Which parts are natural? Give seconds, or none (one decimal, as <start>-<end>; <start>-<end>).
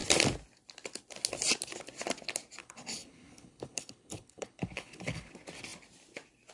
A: 0.0-2.6; 5.3-6.5